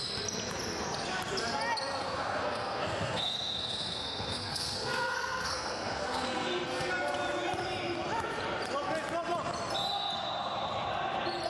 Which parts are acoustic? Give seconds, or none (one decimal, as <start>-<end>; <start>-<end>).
0.0-2.0; 6.9-11.5